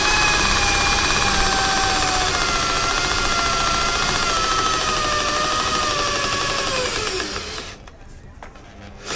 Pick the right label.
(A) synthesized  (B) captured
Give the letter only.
B